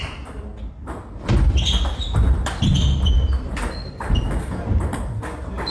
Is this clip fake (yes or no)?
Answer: no